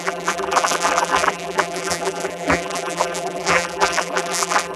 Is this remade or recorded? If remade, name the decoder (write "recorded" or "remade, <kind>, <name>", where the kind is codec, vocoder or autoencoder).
remade, vocoder, BigVGAN v2